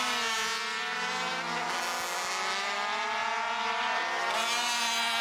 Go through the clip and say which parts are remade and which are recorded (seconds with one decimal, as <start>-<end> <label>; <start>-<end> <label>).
0.0-5.2 recorded